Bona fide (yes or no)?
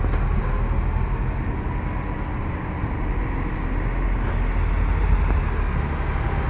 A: yes